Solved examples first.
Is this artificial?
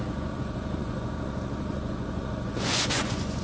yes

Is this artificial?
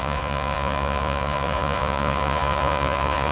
yes